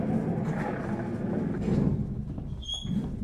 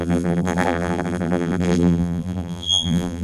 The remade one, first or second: second